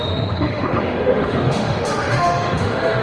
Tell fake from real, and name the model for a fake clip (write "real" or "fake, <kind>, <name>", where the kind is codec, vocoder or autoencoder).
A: fake, autoencoder, DAC-VAE